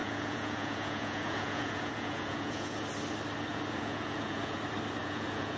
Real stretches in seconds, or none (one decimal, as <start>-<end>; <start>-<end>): 2.8-3.5; 4.6-5.0